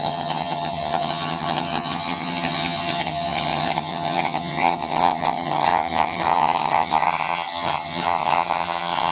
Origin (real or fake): fake